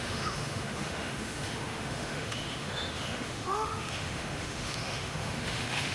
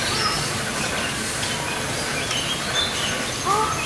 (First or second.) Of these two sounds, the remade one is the first